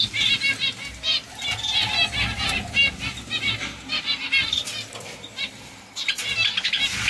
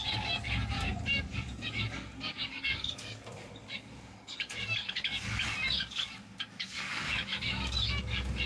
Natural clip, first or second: first